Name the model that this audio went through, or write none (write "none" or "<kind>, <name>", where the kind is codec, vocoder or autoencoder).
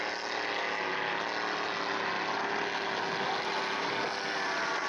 none